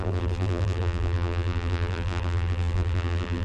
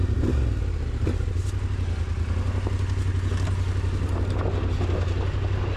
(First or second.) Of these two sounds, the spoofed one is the first